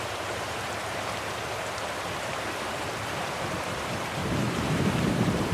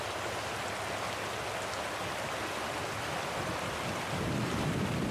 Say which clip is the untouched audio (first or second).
second